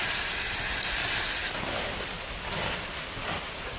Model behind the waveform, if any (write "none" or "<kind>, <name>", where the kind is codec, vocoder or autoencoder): vocoder, BigVGAN v2